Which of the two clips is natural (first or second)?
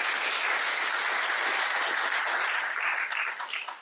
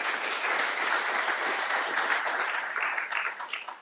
first